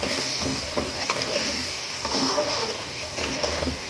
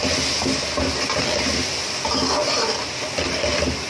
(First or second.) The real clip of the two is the second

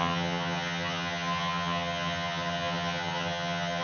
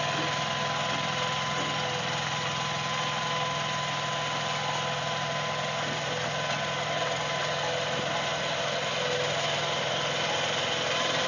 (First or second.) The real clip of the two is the second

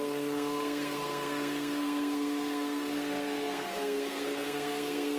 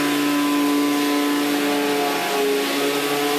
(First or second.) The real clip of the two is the second